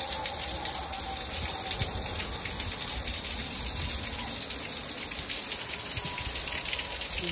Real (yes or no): yes